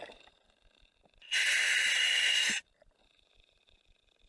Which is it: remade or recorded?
recorded